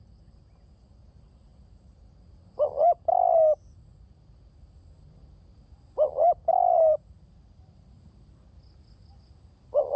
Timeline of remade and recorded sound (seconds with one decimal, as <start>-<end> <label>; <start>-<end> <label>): 0.0-6.5 recorded; 6.5-7.4 remade; 7.4-10.0 recorded